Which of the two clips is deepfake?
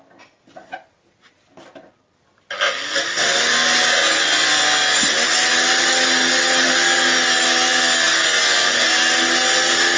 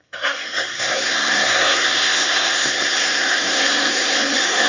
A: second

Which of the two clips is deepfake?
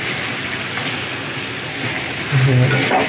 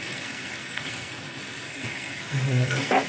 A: second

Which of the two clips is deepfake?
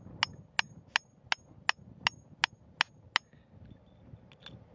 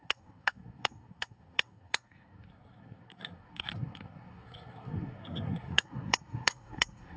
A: second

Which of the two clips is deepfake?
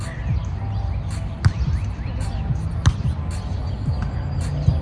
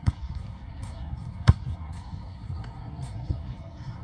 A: second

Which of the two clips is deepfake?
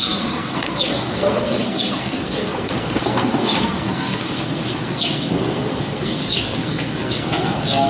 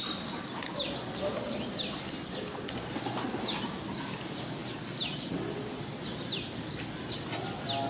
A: first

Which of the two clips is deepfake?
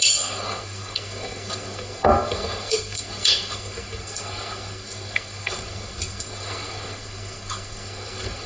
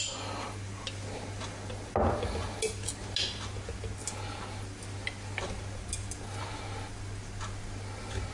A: first